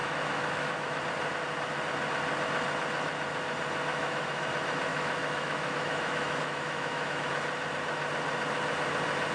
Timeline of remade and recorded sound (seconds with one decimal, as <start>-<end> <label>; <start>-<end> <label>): 0.0-1.0 remade; 1.0-3.9 recorded; 3.9-4.5 remade; 4.5-4.9 recorded; 4.9-7.3 remade; 7.3-9.3 recorded